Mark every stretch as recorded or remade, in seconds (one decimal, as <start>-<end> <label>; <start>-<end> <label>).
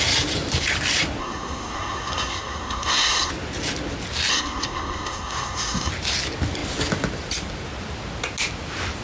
0.0-1.2 recorded; 1.2-3.3 remade; 3.3-4.3 recorded; 4.3-5.9 remade; 5.9-9.0 recorded